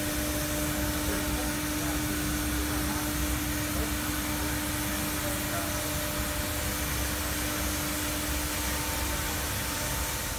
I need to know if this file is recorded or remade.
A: recorded